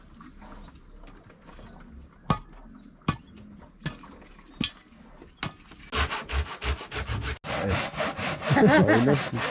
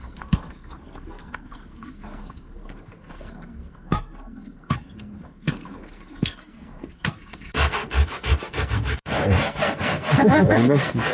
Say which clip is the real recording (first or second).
first